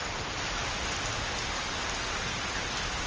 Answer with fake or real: fake